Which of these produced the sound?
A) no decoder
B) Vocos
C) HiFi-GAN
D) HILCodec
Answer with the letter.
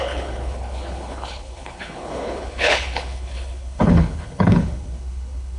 D